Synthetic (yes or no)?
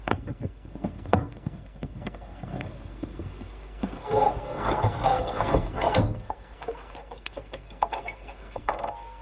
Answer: yes